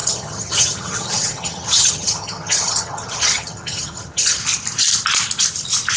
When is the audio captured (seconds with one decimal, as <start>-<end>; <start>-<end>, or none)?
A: 4.4-6.0